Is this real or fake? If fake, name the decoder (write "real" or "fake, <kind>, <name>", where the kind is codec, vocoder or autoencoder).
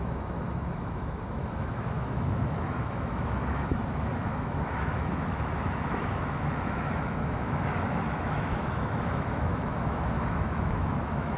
fake, autoencoder, DAC-VAE